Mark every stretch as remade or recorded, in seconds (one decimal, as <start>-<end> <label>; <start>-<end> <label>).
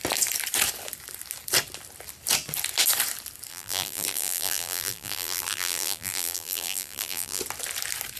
0.0-3.5 recorded; 3.5-7.4 remade; 7.4-8.2 recorded